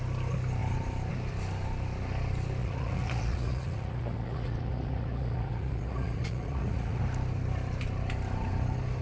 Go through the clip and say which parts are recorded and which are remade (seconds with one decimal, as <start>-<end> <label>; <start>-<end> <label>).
0.0-2.6 recorded; 2.6-7.0 remade; 7.0-9.0 recorded